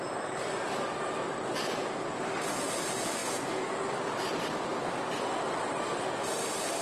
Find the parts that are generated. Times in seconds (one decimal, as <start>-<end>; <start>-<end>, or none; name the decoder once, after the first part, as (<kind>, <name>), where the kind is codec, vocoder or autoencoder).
3.2-3.8 (vocoder, Vocos)